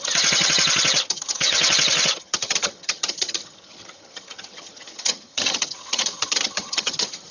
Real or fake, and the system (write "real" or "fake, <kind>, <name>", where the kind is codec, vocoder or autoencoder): fake, vocoder, HiFi-GAN